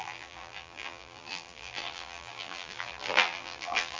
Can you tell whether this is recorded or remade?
remade